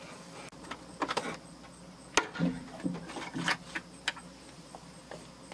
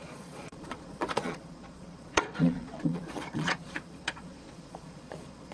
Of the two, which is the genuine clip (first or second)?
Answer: first